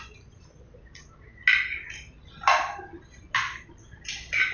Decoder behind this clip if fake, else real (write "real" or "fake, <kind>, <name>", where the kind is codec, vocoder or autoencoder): real